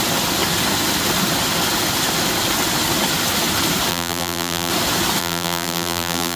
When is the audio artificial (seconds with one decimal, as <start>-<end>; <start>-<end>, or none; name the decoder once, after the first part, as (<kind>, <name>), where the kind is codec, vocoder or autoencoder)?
3.9-4.7 (vocoder, BigVGAN v2); 5.2-6.4